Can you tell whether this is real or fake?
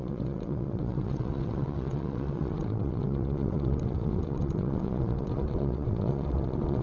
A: fake